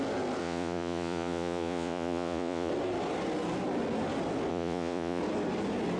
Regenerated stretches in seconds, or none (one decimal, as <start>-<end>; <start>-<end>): 0.4-2.7; 4.5-5.2